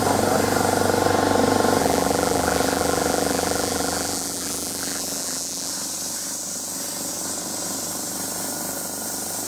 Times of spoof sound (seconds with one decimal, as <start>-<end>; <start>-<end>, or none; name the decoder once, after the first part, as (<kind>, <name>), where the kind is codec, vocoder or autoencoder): 1.8-5.7 (vocoder, BigVGAN v2)